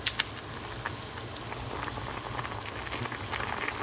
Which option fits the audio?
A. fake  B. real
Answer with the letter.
B